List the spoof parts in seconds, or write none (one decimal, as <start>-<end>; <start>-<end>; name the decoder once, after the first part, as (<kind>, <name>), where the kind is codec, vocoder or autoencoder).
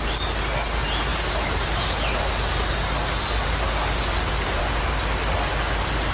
none